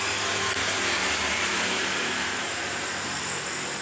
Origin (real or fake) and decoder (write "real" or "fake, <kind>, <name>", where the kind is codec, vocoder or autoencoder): real